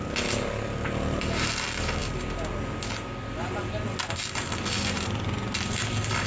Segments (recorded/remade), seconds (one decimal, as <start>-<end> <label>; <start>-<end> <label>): 0.0-6.3 recorded